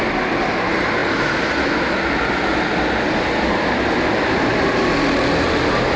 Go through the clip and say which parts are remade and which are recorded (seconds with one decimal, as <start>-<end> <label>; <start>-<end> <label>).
0.0-6.0 recorded